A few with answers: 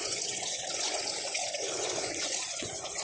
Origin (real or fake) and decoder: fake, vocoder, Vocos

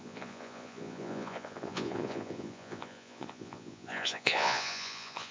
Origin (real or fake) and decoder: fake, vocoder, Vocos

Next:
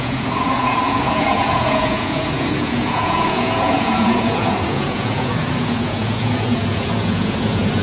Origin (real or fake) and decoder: fake, vocoder, Vocos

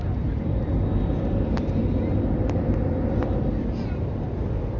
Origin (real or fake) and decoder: real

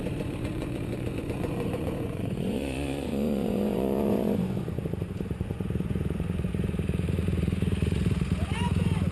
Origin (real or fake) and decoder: fake, vocoder, Vocos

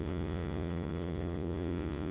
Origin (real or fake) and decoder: fake, vocoder, Vocos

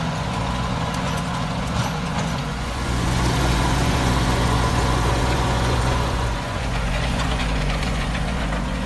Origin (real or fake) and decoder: fake, vocoder, Vocos